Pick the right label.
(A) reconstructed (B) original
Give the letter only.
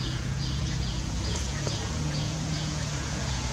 A